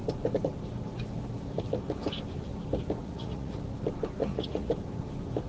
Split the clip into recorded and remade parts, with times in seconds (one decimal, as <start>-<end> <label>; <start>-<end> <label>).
0.0-3.0 recorded; 3.0-3.6 remade; 3.6-4.2 recorded; 4.2-4.7 remade; 4.7-5.5 recorded